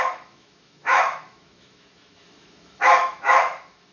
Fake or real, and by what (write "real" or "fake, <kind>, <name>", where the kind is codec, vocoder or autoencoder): fake, autoencoder, DAC-VAE